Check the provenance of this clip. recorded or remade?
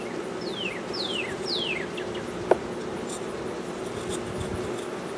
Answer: recorded